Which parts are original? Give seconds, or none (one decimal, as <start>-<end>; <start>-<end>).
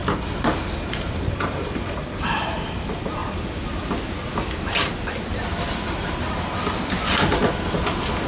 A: 0.0-0.6; 3.2-8.3